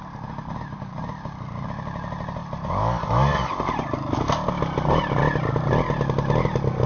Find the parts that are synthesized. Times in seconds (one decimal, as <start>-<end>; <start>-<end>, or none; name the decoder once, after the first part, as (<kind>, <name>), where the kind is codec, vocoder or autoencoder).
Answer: none